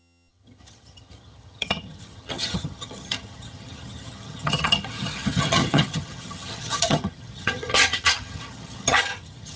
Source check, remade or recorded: remade